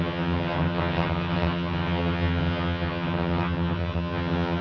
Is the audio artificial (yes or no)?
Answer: yes